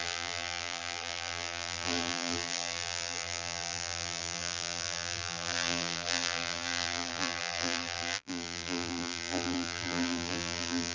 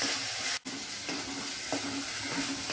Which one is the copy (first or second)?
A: first